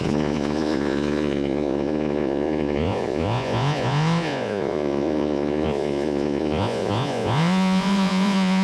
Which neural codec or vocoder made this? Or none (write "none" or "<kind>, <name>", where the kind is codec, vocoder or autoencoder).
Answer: vocoder, Vocos